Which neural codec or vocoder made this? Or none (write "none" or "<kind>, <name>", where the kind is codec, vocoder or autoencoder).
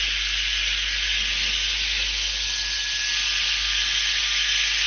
none